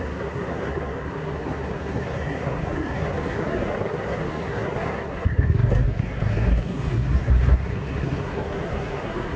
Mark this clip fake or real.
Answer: fake